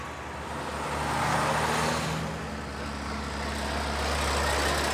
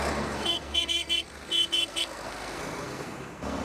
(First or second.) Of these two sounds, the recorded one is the first